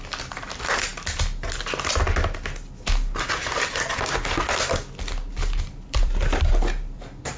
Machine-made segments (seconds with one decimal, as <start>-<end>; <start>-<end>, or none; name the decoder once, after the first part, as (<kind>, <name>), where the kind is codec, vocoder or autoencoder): 0.0-0.9 (vocoder, BigVGAN v2); 5.3-7.4